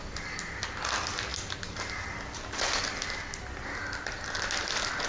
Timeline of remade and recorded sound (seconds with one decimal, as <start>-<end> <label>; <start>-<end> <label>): 0.0-5.1 recorded